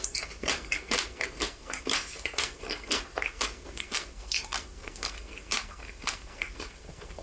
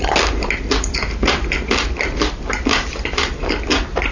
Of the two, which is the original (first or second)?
second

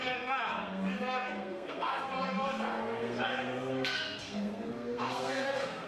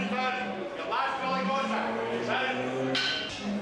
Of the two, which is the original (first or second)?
second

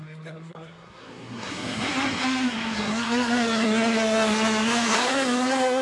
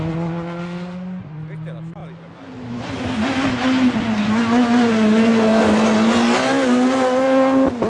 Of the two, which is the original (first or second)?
second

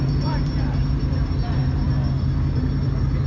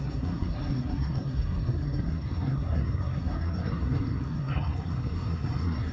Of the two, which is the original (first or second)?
first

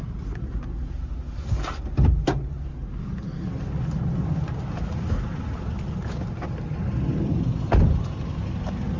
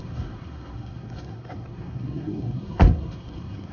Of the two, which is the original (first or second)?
first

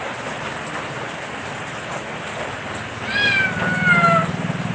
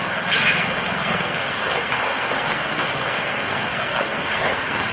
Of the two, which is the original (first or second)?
first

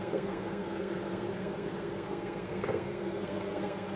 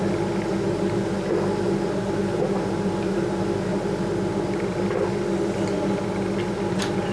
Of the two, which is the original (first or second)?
second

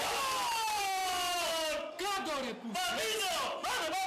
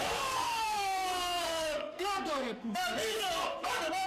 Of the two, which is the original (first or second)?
first